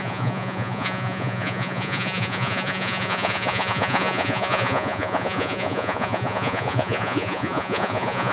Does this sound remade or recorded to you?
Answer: remade